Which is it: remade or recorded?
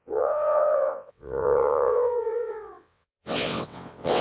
remade